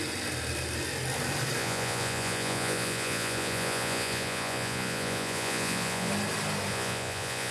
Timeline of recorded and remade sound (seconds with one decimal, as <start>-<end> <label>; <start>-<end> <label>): 0.0-1.6 recorded; 1.6-6.1 remade; 6.1-6.7 recorded; 6.7-7.5 remade